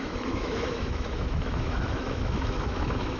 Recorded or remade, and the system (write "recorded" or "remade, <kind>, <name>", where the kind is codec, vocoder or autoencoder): remade, autoencoder, DAC-VAE